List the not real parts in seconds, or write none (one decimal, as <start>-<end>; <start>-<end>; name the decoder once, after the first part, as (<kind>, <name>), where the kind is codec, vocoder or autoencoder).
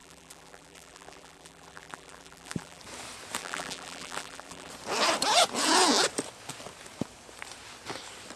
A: 0.0-2.8 (vocoder, BigVGAN v2); 3.4-4.7